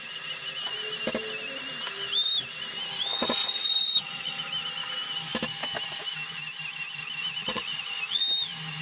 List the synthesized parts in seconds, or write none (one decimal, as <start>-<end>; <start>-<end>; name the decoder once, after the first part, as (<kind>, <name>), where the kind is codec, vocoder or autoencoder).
3.1-4.4 (vocoder, Vocos); 7.4-8.2